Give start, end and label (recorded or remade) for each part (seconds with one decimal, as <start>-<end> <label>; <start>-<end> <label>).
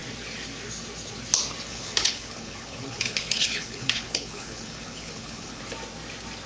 0.0-1.7 recorded; 1.7-5.6 remade; 5.6-6.5 recorded